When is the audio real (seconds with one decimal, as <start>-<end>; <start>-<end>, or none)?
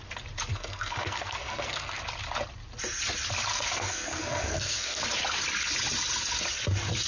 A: 0.0-0.5; 2.0-3.5; 5.0-7.1